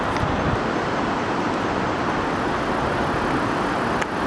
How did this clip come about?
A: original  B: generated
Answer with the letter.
A